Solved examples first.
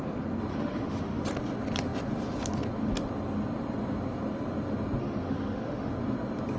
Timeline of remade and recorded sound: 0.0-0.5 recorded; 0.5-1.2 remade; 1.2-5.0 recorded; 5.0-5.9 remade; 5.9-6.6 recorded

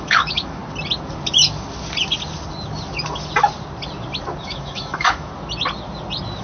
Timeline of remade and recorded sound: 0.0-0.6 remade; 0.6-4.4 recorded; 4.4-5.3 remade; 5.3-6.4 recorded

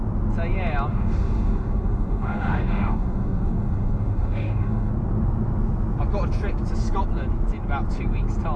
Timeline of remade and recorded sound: 0.0-0.9 recorded; 0.9-4.9 remade; 4.9-8.6 recorded